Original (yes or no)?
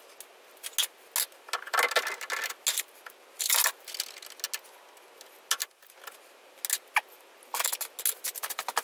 yes